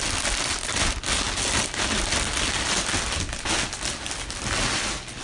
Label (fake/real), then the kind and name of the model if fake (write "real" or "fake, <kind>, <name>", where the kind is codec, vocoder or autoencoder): real